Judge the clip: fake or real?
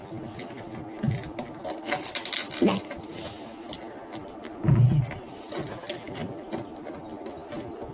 real